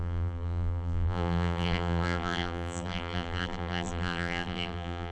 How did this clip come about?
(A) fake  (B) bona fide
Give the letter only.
A